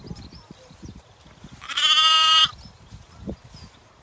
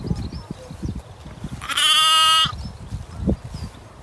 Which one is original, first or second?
second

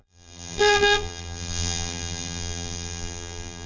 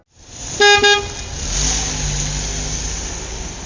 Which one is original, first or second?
second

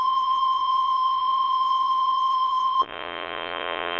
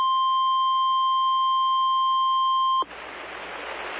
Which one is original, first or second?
second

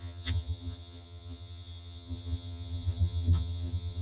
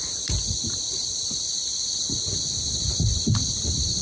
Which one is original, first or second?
second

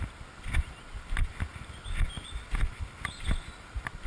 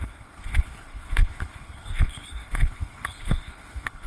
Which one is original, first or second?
first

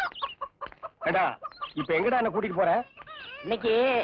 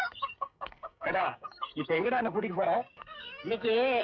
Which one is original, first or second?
first